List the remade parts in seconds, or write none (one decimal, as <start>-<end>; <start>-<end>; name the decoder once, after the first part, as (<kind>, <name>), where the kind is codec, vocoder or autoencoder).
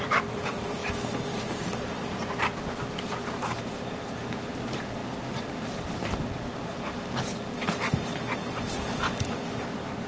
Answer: 0.0-0.8 (vocoder, BigVGAN v2); 1.8-5.0; 9.6-10.1